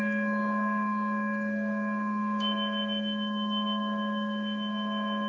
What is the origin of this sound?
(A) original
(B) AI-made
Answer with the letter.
A